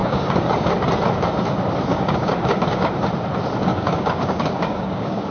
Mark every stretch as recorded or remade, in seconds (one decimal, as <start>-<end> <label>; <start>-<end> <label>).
0.0-0.7 remade; 0.7-1.9 recorded; 1.9-2.9 remade; 2.9-3.7 recorded; 3.7-5.3 remade